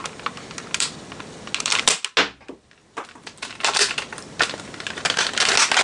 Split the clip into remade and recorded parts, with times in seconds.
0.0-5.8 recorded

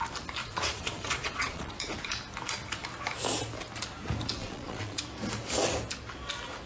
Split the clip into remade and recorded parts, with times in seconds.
0.0-0.4 recorded; 0.4-1.8 remade; 1.8-4.4 recorded; 4.4-5.0 remade; 5.0-6.7 recorded